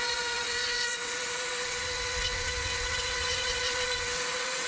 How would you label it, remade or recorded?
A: remade